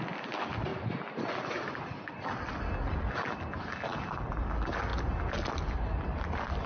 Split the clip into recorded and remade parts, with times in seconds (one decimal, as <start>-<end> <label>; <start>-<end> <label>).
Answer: 0.0-0.7 recorded; 0.7-1.2 remade; 1.2-6.7 recorded